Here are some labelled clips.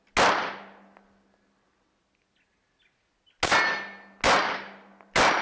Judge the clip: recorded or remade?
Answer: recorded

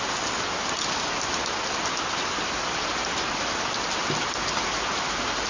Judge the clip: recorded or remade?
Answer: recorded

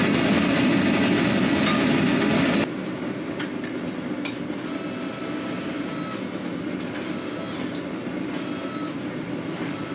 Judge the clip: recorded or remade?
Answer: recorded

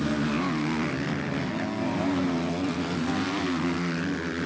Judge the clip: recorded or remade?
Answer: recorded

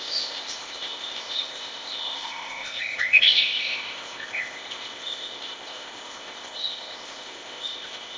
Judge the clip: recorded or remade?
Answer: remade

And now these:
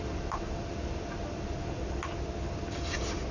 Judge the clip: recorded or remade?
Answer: recorded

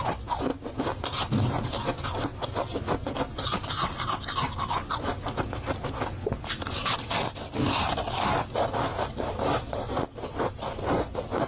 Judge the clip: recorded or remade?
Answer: recorded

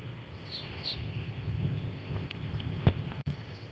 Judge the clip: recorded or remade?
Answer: remade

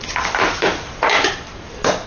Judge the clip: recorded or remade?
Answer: recorded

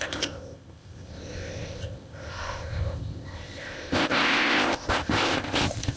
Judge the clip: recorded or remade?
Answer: remade